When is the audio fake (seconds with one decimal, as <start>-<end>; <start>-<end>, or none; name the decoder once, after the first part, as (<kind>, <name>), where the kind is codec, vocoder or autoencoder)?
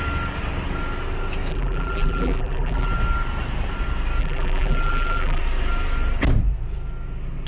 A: 1.5-2.9 (vocoder, BigVGAN v2); 4.2-5.4